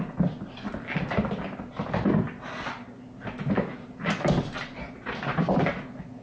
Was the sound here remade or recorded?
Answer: recorded